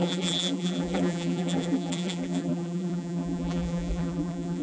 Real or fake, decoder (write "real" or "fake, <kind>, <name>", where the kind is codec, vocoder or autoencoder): fake, vocoder, BigVGAN v2